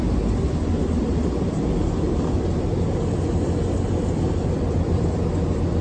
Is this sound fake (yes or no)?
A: no